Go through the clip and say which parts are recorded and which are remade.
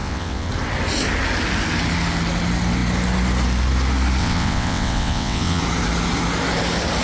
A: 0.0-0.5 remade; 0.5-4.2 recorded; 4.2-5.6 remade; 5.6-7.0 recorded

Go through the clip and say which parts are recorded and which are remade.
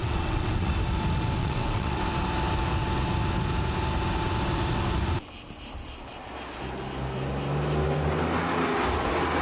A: 0.0-0.7 remade; 0.7-1.4 recorded; 1.4-2.0 remade; 2.0-9.4 recorded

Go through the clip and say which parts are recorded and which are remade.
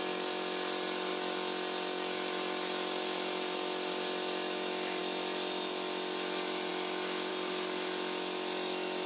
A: 0.0-9.1 recorded